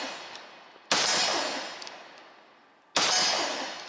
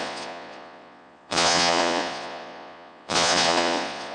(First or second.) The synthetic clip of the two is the second